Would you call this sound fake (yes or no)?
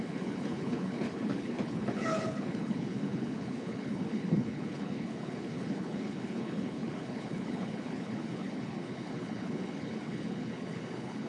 yes